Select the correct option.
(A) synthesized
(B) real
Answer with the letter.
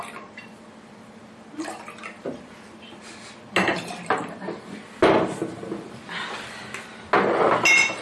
B